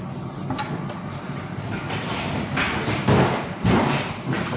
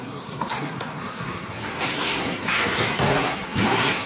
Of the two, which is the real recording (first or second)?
first